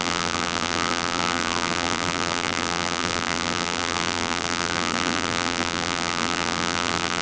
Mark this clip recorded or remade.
remade